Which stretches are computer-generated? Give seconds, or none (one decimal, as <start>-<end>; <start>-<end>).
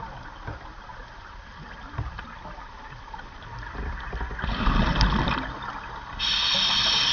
0.9-4.7